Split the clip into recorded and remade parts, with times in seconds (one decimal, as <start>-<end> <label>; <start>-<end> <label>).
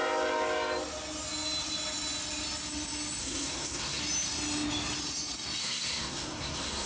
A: 0.0-3.2 recorded; 3.2-4.0 remade; 4.0-5.6 recorded; 5.6-6.9 remade